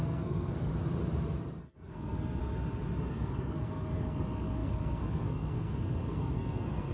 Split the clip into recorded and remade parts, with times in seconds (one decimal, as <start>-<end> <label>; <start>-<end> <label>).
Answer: 0.0-0.7 remade; 0.7-1.6 recorded; 1.6-2.4 remade; 2.4-3.1 recorded; 3.1-6.9 remade